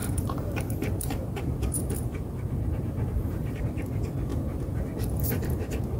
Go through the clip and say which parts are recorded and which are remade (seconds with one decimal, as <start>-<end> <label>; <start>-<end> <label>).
0.0-3.6 remade; 3.6-4.3 recorded; 4.3-5.4 remade; 5.4-6.0 recorded